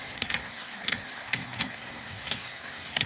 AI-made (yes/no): yes